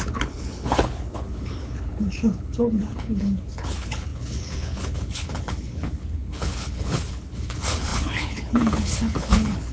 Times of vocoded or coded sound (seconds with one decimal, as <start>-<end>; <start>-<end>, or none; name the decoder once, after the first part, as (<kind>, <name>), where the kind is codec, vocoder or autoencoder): 0.0-9.7 (codec, HILCodec)